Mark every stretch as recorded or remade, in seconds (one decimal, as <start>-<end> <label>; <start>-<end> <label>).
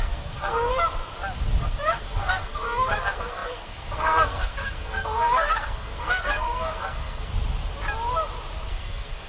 0.0-0.7 remade; 0.7-1.6 recorded; 1.6-7.3 remade; 7.3-8.7 recorded; 8.7-9.3 remade